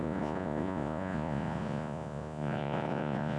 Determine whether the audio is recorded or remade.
remade